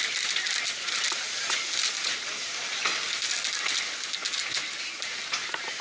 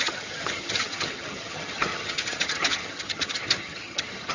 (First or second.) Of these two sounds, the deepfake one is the second